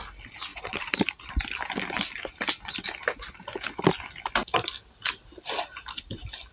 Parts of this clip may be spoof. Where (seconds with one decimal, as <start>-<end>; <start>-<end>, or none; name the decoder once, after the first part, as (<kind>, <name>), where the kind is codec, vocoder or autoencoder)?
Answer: 0.5-1.3 (vocoder, BigVGAN v2)